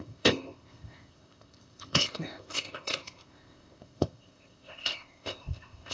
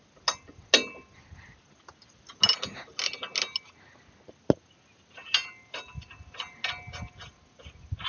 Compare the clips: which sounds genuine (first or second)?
second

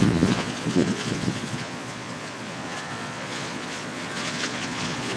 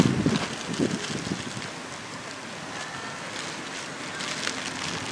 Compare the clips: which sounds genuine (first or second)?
second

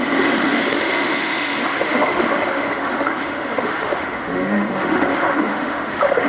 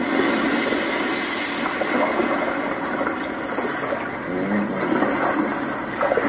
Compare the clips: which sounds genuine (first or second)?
second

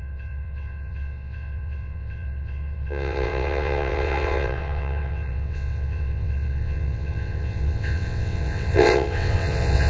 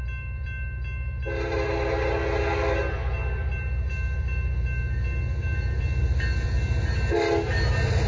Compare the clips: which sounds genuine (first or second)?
second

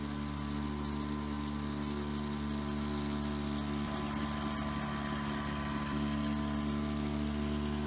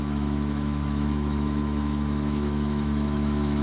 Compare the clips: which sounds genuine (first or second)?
first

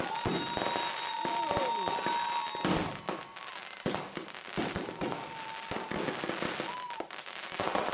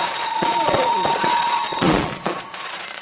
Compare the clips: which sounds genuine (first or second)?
first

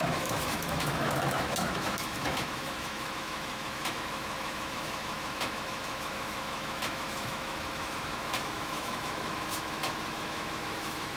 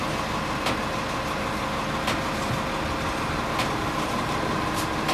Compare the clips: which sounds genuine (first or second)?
second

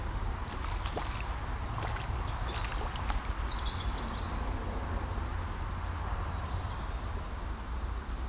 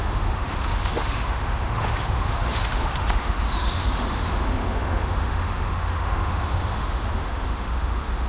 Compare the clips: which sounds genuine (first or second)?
first